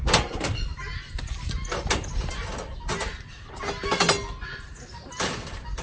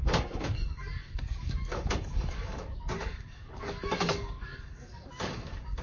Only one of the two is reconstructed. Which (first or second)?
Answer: second